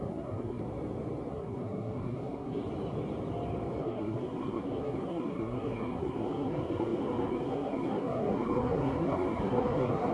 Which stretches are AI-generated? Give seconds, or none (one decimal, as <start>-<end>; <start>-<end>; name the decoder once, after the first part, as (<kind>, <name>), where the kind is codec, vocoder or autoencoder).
0.0-0.6 (codec, SNAC); 1.3-2.6; 3.8-10.1